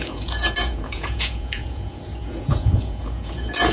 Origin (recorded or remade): remade